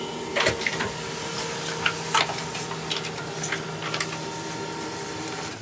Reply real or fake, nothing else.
real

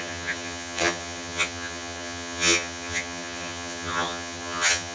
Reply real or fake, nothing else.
fake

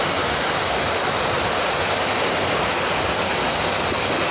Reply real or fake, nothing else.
real